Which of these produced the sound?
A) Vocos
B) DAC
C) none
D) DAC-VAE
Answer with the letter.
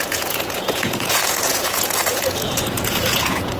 A